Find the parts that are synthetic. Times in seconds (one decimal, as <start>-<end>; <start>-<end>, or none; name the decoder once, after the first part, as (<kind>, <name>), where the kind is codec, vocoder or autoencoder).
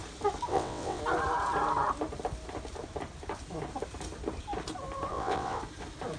0.5-1.0 (vocoder, WaveNeXt); 5.1-5.6